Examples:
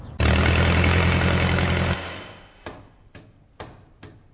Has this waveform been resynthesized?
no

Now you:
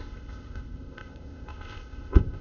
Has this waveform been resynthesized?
yes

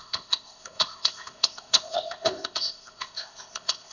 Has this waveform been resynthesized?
yes